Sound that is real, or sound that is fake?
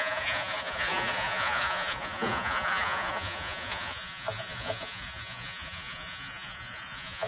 fake